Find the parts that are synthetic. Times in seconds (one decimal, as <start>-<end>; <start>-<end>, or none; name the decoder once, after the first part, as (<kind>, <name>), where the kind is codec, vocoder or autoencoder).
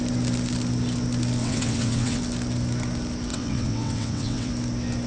1.4-2.2 (vocoder, WaveNeXt); 3.3-4.5